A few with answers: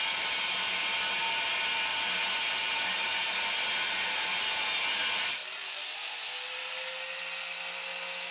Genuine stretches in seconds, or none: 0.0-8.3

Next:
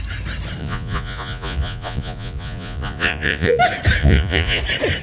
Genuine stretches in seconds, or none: 0.0-0.6; 3.6-4.0; 4.6-5.0

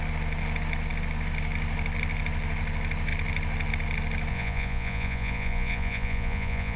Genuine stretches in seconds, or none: 0.0-4.3

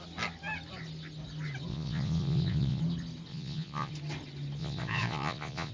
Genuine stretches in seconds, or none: 0.0-1.7; 2.8-3.3; 3.9-4.6

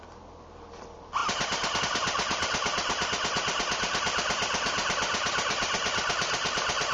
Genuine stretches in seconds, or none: 0.0-6.9

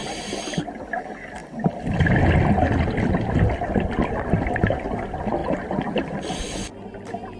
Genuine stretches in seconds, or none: 0.0-5.4; 6.3-7.4

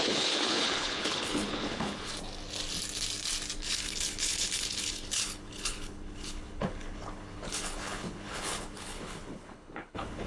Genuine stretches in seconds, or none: 2.1-3.6